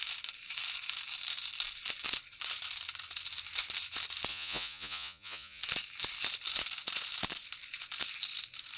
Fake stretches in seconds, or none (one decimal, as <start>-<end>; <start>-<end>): 4.3-5.6